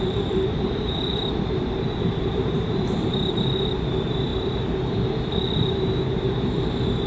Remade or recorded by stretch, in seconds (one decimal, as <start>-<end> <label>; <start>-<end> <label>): 0.0-4.3 remade; 4.3-5.3 recorded; 5.3-7.1 remade